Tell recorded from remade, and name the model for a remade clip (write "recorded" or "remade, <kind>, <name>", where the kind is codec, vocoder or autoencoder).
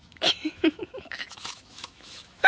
remade, autoencoder, DAC-VAE